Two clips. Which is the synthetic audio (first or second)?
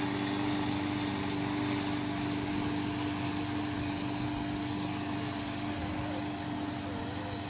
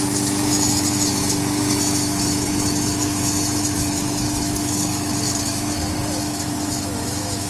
second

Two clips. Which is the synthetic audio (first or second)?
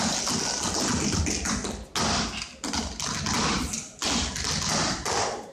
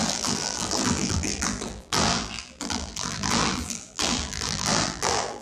second